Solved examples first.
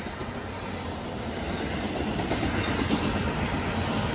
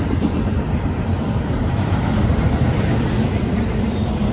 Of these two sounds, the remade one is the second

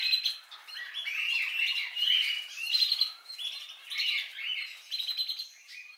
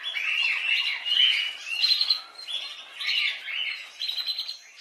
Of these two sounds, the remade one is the first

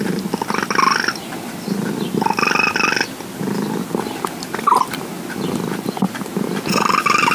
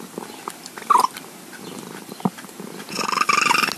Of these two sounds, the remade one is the second